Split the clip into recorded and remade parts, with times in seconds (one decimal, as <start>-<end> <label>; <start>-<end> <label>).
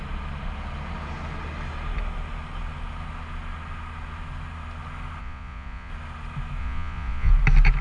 0.0-5.2 recorded; 5.2-5.9 remade; 5.9-6.6 recorded; 6.6-7.3 remade; 7.3-7.8 recorded